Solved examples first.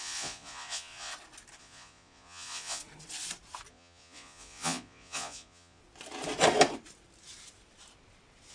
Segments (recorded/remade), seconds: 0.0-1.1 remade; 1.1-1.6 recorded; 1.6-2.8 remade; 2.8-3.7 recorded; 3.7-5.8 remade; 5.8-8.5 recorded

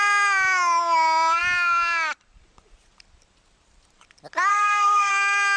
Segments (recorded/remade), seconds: 0.0-4.5 recorded; 4.5-5.1 remade; 5.1-5.6 recorded

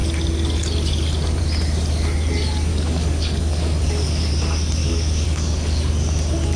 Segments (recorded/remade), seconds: 0.0-2.7 recorded; 2.7-4.3 remade; 4.3-4.8 recorded; 4.8-5.8 remade; 5.8-6.6 recorded

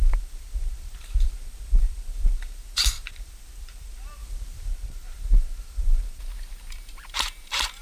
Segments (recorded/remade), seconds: 0.0-7.8 remade